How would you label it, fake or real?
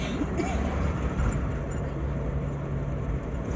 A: real